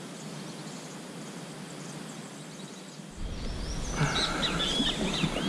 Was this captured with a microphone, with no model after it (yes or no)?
yes